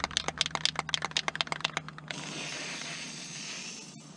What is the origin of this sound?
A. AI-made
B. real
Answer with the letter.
B